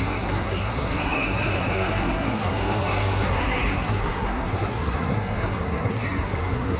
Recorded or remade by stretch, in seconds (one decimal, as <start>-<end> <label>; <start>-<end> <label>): 0.0-6.8 remade